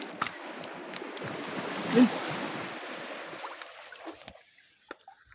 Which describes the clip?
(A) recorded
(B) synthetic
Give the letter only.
A